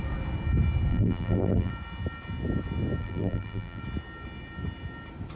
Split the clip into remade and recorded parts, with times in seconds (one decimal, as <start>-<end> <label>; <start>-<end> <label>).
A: 0.0-0.9 recorded; 0.9-1.7 remade; 1.7-3.0 recorded; 3.0-3.8 remade; 3.8-5.4 recorded